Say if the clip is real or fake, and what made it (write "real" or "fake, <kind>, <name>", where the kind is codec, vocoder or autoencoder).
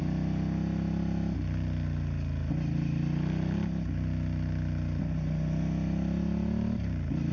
real